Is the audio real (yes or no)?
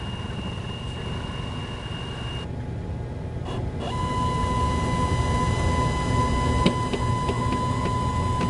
yes